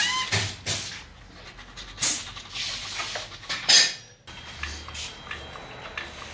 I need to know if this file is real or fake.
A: real